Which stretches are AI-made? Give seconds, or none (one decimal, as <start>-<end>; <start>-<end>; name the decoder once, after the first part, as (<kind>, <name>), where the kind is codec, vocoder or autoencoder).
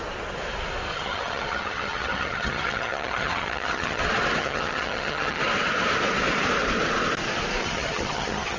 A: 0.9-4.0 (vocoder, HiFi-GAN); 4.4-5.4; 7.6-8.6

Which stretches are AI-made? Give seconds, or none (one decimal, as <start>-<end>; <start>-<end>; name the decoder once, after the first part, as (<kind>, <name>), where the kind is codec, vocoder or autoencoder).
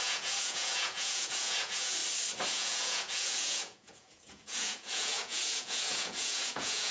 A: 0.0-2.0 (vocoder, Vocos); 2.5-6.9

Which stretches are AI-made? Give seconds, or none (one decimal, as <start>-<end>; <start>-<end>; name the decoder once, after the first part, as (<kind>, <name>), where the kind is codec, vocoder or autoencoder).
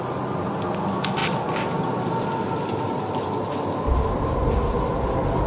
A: none